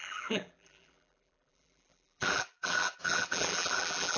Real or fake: fake